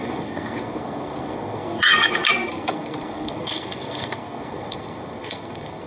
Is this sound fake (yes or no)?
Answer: yes